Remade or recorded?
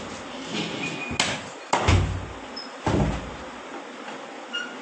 recorded